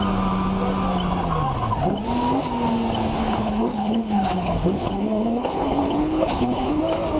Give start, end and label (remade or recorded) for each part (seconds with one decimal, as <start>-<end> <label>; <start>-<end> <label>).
0.0-3.2 recorded; 3.2-6.8 remade; 6.8-7.2 recorded